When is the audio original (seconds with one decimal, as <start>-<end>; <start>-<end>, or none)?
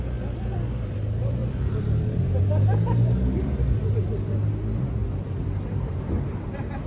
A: 0.0-1.4; 2.2-5.0; 5.9-6.9